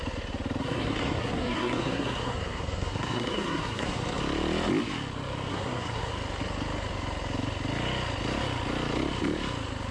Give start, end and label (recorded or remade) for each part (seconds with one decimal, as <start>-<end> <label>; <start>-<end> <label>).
0.0-0.6 recorded; 0.6-4.2 remade; 4.2-5.5 recorded; 5.5-6.1 remade; 6.1-9.9 recorded